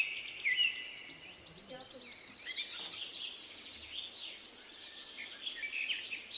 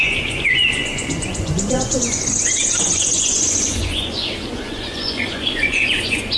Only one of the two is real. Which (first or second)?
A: first